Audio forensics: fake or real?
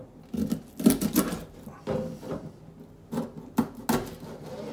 real